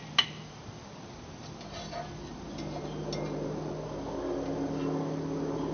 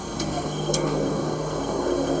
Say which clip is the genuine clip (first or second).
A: first